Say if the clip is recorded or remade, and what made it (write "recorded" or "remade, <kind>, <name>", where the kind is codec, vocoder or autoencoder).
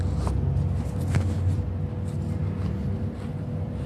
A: recorded